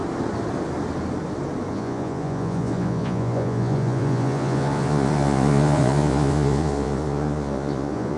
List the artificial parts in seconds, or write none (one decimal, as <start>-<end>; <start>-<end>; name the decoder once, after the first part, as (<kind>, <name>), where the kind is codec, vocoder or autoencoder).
1.7-8.2 (vocoder, Vocos)